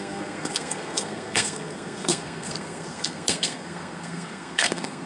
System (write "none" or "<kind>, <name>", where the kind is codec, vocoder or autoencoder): codec, SNAC